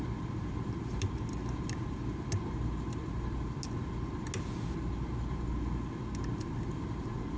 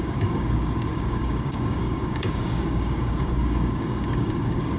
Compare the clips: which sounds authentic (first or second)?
first